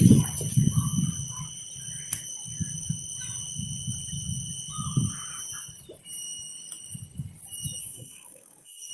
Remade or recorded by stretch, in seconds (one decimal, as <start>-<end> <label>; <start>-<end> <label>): 0.0-7.8 recorded; 7.8-8.9 remade